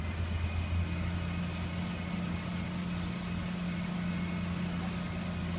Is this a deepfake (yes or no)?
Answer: no